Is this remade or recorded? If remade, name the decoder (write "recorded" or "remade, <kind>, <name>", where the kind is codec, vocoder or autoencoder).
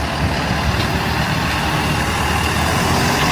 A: recorded